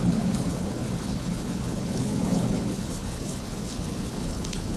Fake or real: fake